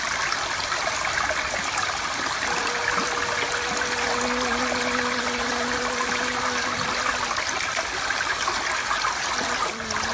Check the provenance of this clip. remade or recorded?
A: recorded